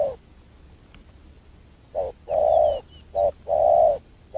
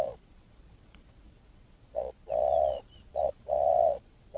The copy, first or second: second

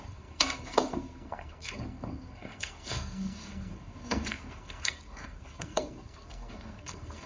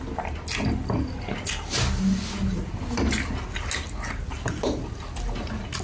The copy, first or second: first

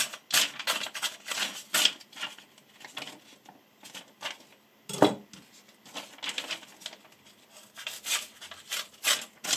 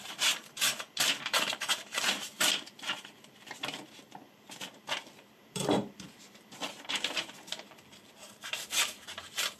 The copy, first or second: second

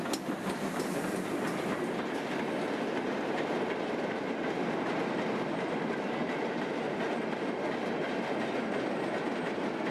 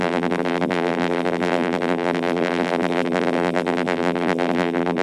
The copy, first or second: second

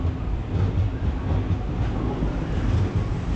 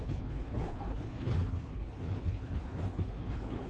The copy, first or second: second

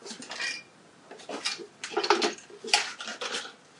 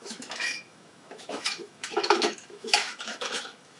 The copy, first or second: second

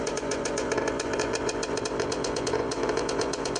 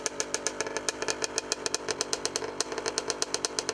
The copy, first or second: first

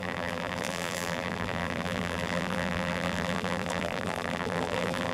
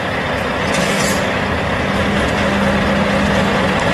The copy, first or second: first